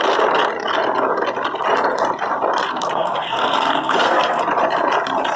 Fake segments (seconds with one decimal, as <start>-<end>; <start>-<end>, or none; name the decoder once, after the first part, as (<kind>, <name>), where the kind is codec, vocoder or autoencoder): 2.7-4.4 (codec, SNAC)